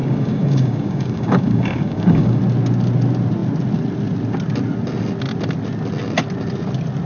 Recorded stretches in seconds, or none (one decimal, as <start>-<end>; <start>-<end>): 2.4-7.0